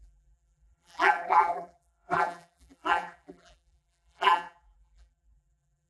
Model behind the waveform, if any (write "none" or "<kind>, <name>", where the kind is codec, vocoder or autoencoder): vocoder, BigVGAN v2